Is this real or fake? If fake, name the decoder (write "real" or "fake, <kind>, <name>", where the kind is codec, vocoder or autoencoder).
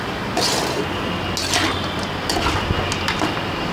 real